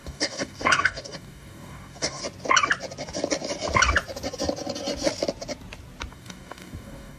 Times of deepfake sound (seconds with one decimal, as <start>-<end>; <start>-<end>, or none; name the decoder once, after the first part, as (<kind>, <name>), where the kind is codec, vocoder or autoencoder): 0.0-2.2 (codec, DAC); 6.1-7.2